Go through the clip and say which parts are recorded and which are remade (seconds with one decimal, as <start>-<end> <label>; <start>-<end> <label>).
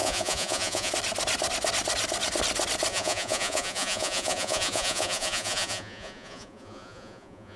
0.0-0.9 remade; 0.9-2.9 recorded; 2.9-7.6 remade